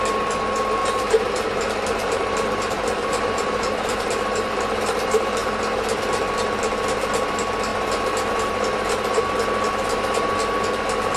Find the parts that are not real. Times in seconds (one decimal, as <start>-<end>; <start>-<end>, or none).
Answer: 0.8-4.0